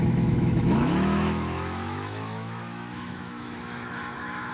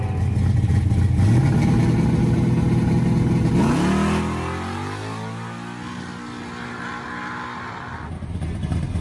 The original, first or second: second